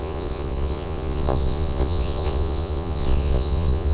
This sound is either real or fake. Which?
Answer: fake